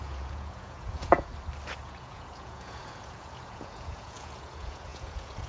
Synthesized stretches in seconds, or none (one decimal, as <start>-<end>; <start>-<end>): 0.0-1.3; 1.8-5.5